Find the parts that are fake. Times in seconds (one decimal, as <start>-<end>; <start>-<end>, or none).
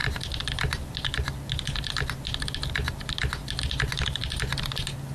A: none